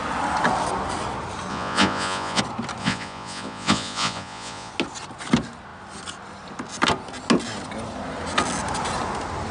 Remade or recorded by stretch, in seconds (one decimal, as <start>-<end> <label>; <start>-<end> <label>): 0.0-1.5 recorded; 1.5-2.4 remade; 2.4-2.8 recorded; 2.8-4.7 remade; 4.7-9.5 recorded